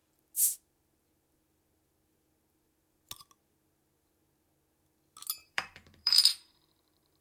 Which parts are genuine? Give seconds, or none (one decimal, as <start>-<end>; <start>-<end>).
0.0-5.4